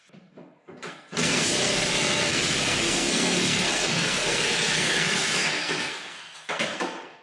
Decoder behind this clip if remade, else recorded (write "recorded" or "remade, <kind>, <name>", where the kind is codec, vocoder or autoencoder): remade, codec, SNAC